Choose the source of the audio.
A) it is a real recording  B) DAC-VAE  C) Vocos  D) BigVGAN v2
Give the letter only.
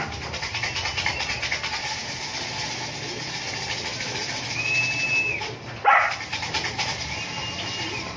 A